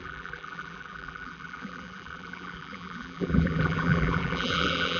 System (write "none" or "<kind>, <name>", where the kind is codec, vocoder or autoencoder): vocoder, BigVGAN v2